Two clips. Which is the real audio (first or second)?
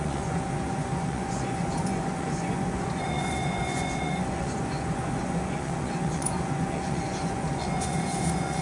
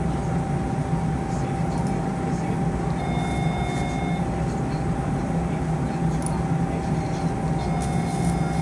second